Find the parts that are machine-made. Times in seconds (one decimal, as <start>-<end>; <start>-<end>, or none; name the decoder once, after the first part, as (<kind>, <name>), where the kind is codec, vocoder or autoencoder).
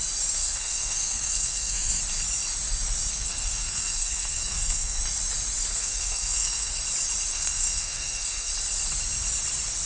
0.4-2.0 (codec, SNAC); 3.1-5.0; 5.7-6.7; 7.3-8.5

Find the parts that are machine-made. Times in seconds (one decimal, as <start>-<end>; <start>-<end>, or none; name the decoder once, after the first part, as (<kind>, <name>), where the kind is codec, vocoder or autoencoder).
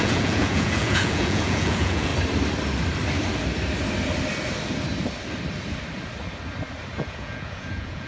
0.0-2.1 (vocoder, Vocos); 7.0-8.1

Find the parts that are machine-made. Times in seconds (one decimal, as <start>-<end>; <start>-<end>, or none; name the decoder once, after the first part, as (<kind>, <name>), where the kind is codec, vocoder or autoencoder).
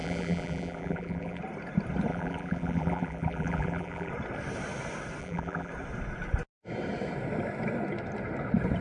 0.0-1.4 (vocoder, BigVGAN v2); 2.1-4.1; 5.2-5.7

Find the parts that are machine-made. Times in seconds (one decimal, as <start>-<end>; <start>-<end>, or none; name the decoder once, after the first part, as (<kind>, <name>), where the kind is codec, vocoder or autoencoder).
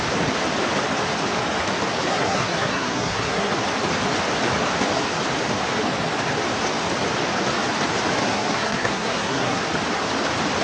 2.1-3.5 (codec, SNAC); 8.2-9.6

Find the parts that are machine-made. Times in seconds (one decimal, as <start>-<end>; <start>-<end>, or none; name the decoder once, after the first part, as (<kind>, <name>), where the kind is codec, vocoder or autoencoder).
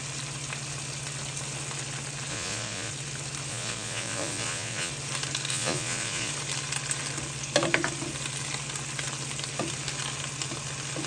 2.3-2.9 (vocoder, Vocos); 3.5-4.9; 5.5-6.3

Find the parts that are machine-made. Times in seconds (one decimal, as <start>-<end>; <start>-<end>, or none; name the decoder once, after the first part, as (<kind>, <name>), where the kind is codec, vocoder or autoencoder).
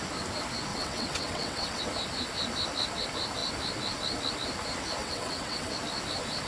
0.7-1.8 (vocoder, WaveNeXt); 5.0-5.7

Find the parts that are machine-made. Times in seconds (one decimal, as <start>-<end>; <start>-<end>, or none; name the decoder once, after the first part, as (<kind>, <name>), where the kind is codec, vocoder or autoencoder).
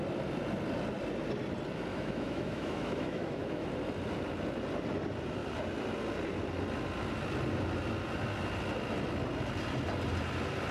1.9-3.7 (autoencoder, DAC-VAE)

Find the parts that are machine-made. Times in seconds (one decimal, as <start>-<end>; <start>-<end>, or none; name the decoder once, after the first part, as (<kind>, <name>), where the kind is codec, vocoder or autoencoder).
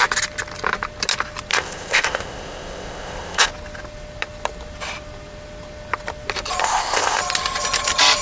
1.5-3.5 (codec, ZipCodec); 6.6-7.2